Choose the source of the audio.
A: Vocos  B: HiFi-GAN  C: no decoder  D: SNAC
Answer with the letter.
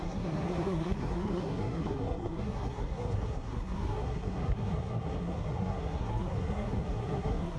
D